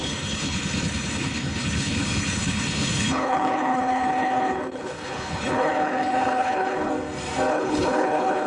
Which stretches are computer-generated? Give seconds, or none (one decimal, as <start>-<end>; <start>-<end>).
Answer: 0.0-6.9; 7.5-8.5